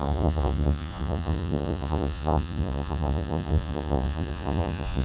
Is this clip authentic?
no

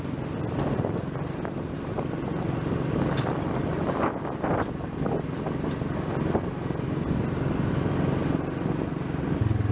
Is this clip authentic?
yes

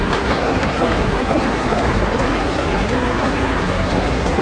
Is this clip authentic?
no